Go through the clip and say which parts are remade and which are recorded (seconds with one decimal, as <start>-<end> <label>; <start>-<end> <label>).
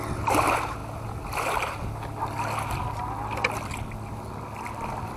0.0-5.2 recorded